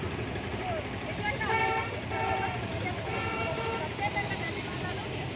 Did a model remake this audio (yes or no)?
no